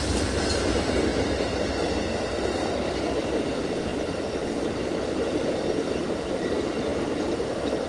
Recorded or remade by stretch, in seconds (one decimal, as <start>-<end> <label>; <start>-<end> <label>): 0.0-7.9 recorded